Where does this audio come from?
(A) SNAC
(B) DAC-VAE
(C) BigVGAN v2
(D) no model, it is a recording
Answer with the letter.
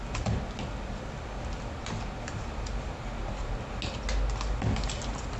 D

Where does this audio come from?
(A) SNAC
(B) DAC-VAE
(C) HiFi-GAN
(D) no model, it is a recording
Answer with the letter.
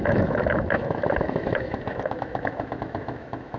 B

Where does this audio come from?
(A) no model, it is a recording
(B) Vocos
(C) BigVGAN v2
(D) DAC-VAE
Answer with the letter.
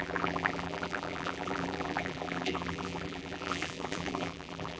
C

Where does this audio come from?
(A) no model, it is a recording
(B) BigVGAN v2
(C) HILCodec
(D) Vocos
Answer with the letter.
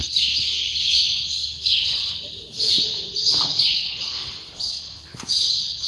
C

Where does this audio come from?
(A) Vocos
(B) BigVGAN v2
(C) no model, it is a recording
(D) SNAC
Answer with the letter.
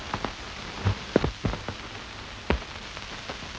C